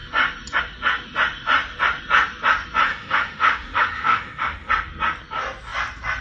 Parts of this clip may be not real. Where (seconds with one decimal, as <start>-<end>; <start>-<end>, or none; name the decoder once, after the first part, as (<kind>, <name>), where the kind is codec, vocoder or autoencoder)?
2.9-4.7 (autoencoder, DAC-VAE)